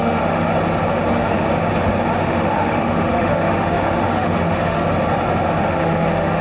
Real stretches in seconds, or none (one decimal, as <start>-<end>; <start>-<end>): 0.5-1.1; 1.5-2.2; 4.8-5.7